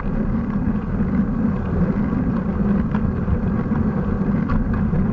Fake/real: fake